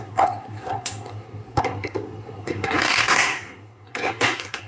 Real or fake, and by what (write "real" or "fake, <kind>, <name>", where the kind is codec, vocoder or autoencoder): fake, codec, SNAC